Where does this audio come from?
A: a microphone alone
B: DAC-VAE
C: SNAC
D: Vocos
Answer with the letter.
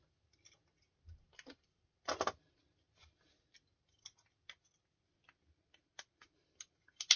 A